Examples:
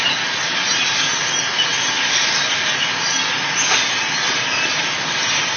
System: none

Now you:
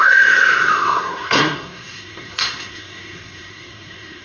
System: codec, SNAC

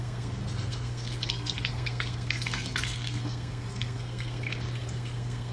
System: codec, SNAC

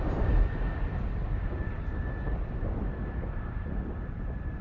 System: none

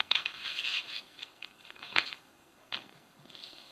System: codec, SNAC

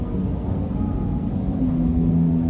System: codec, SNAC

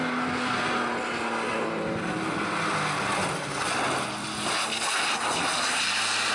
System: none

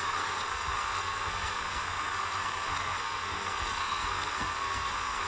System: codec, SNAC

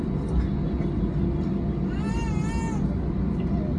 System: none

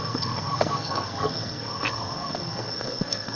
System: codec, SNAC